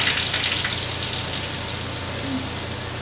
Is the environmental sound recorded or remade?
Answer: recorded